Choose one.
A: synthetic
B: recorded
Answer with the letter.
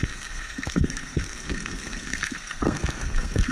A